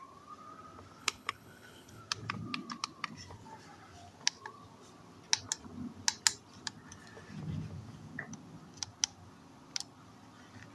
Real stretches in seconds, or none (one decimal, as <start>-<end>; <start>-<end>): 0.0-1.0; 2.0-10.7